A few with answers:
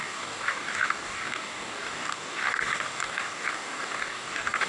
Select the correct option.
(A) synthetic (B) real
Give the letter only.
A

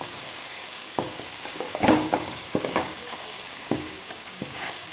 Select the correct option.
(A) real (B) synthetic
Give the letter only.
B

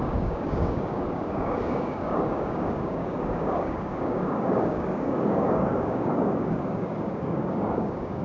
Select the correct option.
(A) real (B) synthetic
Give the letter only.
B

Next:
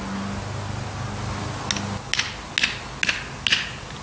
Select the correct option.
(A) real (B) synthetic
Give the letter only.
A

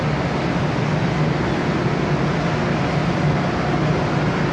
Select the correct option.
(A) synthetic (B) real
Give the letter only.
B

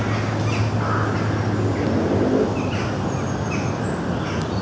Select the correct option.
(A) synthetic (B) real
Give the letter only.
B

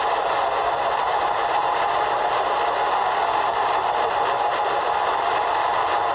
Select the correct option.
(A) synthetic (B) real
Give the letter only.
B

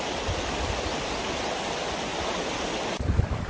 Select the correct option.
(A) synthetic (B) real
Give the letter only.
B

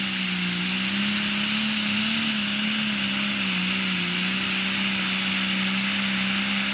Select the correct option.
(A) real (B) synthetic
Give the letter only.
A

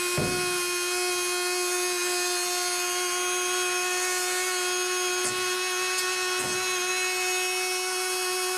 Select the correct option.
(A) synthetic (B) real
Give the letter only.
B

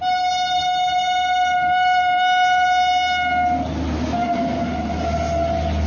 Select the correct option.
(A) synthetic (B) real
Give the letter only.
B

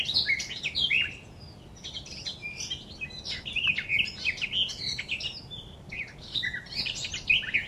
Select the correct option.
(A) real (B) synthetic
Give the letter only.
A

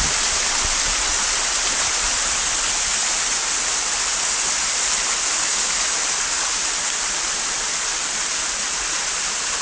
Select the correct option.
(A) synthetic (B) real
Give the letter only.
B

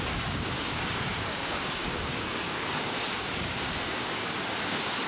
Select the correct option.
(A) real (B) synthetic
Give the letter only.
B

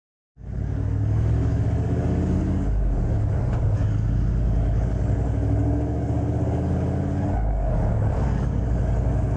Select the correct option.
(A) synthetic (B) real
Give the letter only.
A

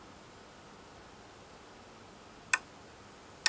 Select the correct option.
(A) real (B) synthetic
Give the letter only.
A